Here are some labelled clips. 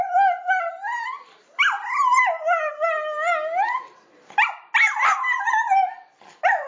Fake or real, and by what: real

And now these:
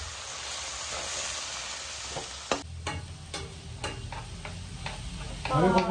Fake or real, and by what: real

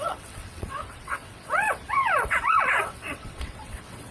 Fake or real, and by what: fake, vocoder, WaveNeXt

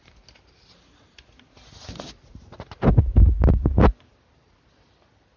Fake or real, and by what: real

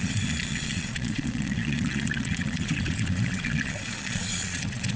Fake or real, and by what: fake, vocoder, Vocos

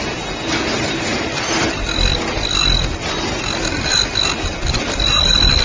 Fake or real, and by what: real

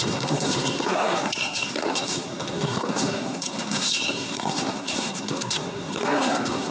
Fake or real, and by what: fake, codec, SNAC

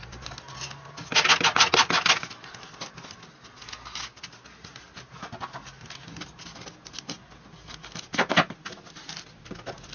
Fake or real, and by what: real